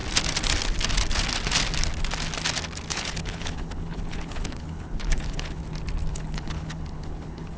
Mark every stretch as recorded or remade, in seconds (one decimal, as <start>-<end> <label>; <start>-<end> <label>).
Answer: 0.0-2.9 recorded; 2.9-5.6 remade; 5.6-6.1 recorded; 6.1-7.6 remade